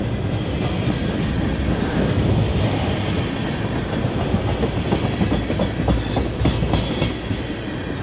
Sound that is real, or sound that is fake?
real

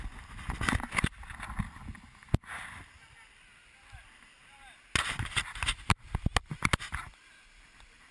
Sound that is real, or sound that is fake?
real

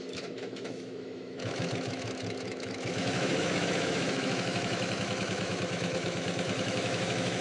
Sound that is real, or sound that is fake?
fake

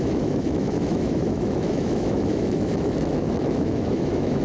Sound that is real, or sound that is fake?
fake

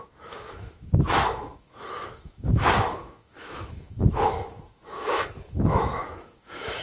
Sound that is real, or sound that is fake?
fake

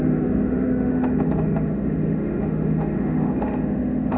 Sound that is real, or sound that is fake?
fake